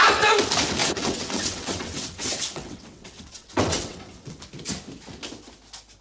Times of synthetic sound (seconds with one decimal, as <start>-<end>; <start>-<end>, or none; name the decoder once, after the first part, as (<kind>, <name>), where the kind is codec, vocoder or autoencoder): 0.8-4.4 (vocoder, WaveNeXt)

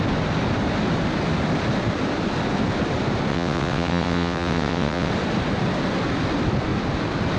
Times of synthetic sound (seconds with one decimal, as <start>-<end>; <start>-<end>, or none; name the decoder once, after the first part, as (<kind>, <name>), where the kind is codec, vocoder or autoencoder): 3.3-5.1 (vocoder, WaveNeXt)

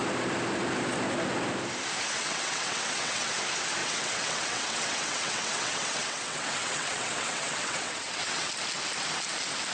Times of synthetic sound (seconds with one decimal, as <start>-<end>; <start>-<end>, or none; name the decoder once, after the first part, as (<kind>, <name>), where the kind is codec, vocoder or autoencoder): 2.2-3.3 (vocoder, WaveNeXt); 3.8-8.5

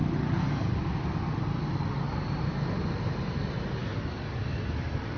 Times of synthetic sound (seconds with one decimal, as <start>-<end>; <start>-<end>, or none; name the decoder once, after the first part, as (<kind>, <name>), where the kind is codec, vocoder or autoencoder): none

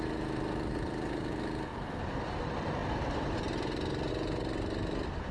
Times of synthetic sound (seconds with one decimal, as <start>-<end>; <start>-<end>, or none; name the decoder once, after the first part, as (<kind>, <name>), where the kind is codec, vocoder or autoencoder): none

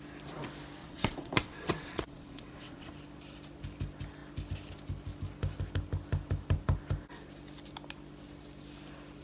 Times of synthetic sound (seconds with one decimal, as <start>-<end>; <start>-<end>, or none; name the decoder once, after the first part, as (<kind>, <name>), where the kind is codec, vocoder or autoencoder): 0.8-2.9 (vocoder, WaveNeXt)